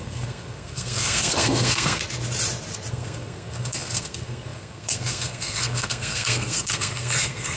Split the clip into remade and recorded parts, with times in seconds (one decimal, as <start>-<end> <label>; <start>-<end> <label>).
0.0-2.0 remade; 2.0-2.9 recorded; 2.9-7.6 remade